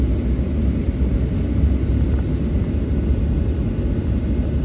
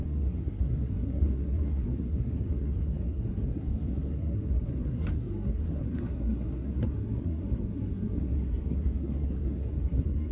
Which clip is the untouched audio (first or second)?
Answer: first